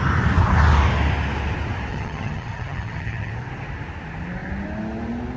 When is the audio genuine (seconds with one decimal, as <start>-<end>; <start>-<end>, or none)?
0.0-1.9; 3.3-5.4